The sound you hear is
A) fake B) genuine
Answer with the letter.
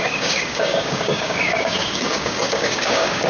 A